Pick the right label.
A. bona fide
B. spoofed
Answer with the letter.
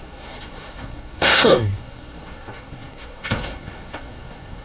B